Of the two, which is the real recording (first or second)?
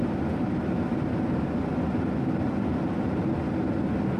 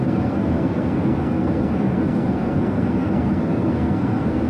first